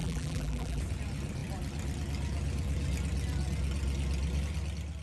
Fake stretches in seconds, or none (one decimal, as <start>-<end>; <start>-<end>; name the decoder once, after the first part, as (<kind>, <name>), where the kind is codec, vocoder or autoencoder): 0.0-0.8 (vocoder, BigVGAN v2)